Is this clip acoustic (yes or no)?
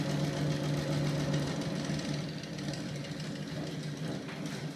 yes